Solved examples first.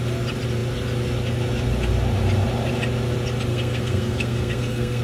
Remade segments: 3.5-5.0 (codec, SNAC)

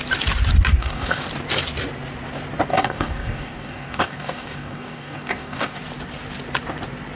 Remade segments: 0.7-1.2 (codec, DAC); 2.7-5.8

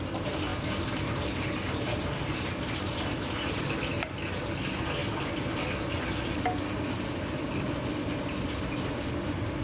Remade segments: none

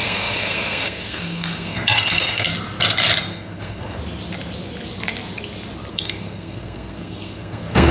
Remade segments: 0.0-2.5 (codec, SNAC); 3.3-4.0; 5.9-7.9

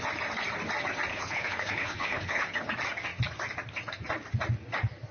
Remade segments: 1.1-2.5 (codec, HILCodec)

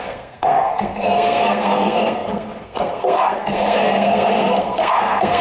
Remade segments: 0.0-5.4 (codec, SNAC)

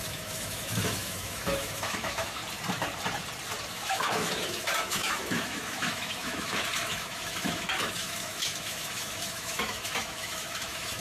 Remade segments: 0.0-2.4 (autoencoder, DAC-VAE); 3.7-11.0

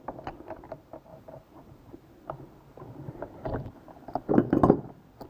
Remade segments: 1.1-4.3 (vocoder, BigVGAN v2)